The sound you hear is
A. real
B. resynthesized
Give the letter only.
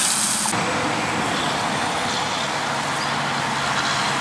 A